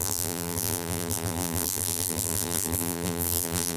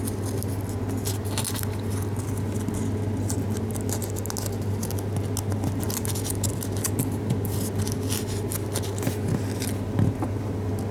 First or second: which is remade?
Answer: first